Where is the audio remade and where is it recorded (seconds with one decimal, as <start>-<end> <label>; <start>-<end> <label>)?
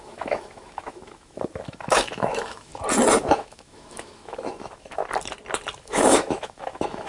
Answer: 0.0-2.7 remade; 2.7-3.2 recorded; 3.2-5.0 remade; 5.0-5.8 recorded; 5.8-7.1 remade